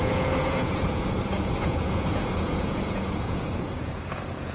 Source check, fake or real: fake